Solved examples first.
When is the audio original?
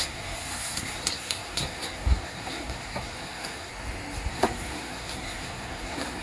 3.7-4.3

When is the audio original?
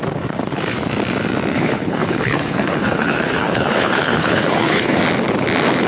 0.0-1.5; 5.0-5.9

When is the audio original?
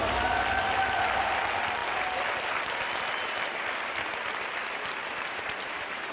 0.0-5.0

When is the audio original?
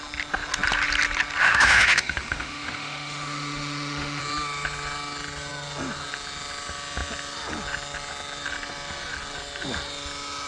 0.0-1.4; 4.2-10.5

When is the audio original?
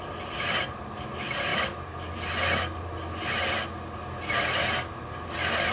0.0-5.7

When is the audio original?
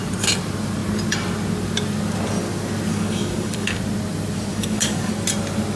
0.0-2.9; 3.8-4.5; 5.1-5.8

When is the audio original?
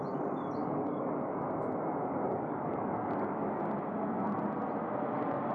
0.0-0.6; 1.4-2.0; 3.6-5.5